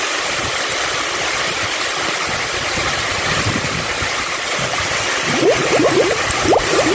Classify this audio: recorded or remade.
remade